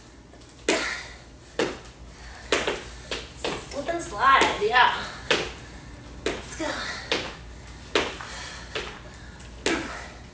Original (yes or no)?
yes